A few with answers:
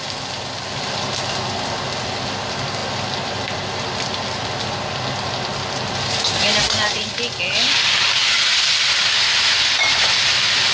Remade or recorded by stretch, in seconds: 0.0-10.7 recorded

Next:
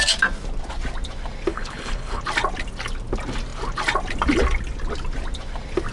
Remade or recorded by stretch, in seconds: 0.0-1.5 recorded; 1.5-2.2 remade; 2.2-5.9 recorded

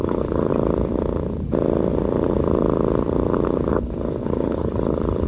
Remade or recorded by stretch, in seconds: 0.0-0.5 remade; 0.5-3.7 recorded; 3.7-5.3 remade

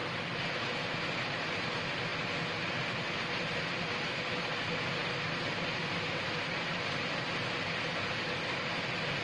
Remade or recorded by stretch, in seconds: 0.0-9.2 recorded

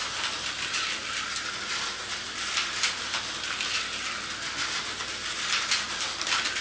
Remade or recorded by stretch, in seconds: 0.0-6.6 recorded

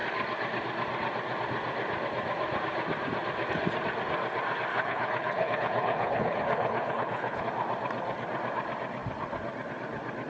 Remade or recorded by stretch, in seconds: 0.0-4.7 recorded; 4.7-7.4 remade; 7.4-10.3 recorded

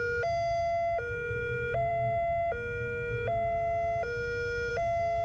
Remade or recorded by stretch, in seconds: 0.0-5.2 recorded

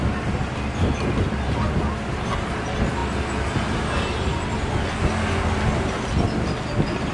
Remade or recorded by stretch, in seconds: 0.0-7.1 recorded